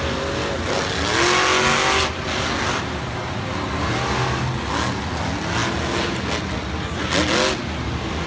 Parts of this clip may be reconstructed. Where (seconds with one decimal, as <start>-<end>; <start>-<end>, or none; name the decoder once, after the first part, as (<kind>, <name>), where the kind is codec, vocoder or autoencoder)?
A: none